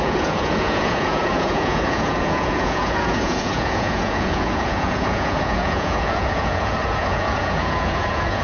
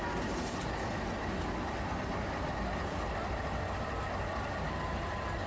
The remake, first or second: first